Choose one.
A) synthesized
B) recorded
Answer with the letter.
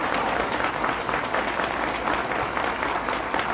B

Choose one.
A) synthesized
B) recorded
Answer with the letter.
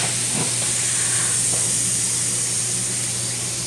B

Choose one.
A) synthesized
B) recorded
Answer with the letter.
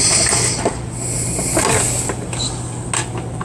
B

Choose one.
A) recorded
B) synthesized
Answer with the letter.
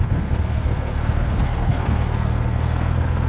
B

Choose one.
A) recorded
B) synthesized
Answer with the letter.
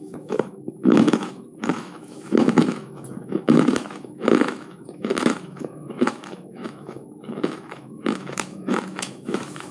B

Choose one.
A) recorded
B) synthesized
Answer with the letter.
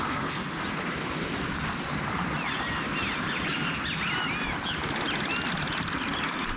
A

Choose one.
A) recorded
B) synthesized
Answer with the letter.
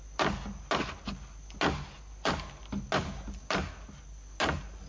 A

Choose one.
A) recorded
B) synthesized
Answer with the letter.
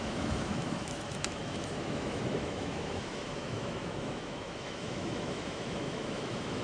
B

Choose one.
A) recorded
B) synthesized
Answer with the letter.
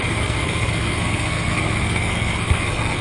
B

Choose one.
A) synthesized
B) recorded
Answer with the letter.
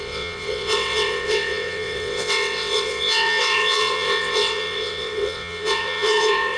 A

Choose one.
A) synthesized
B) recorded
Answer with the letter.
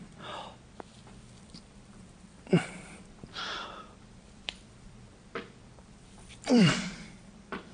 A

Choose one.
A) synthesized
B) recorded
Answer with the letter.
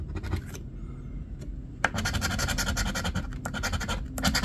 B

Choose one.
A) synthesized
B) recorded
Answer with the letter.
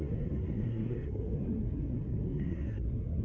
A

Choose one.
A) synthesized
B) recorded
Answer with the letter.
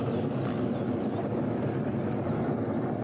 B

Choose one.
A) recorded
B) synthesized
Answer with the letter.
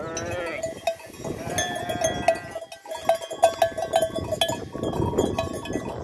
A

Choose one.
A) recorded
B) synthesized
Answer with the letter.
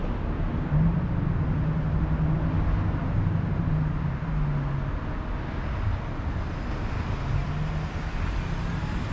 A